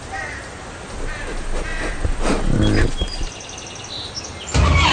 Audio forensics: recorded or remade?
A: recorded